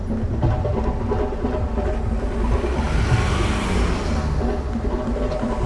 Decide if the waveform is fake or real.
real